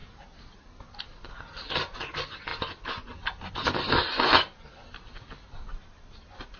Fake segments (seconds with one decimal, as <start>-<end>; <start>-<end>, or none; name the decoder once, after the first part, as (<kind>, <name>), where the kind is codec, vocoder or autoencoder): 1.4-2.5 (vocoder, BigVGAN v2); 3.5-6.6